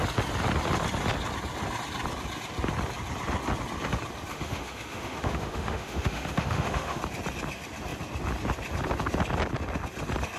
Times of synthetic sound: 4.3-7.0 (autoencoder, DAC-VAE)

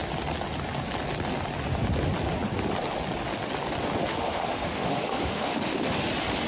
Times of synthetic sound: 4.1-6.1 (autoencoder, DAC-VAE)

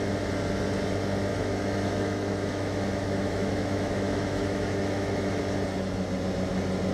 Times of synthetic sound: 1.3-5.4 (autoencoder, DAC-VAE)